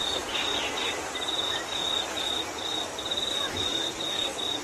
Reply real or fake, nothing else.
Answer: fake